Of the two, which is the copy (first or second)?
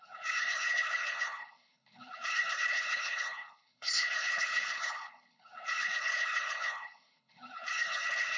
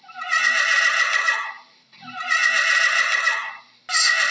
first